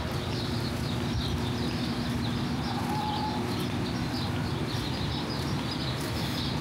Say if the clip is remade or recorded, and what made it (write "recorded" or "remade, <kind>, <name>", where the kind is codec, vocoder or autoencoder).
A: recorded